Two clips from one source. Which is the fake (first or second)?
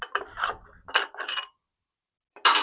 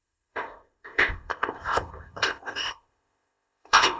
second